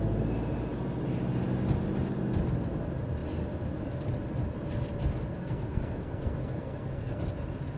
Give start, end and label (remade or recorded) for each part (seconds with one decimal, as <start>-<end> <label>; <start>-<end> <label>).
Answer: 0.0-5.3 recorded; 5.3-7.2 remade; 7.2-7.8 recorded